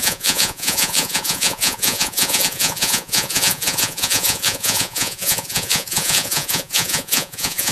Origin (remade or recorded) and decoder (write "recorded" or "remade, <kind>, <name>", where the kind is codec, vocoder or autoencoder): remade, vocoder, Vocos